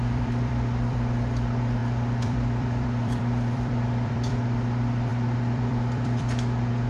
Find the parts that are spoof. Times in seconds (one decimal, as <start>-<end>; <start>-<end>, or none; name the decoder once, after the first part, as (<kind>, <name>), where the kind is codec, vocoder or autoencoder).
0.0-6.9 (vocoder, BigVGAN v2)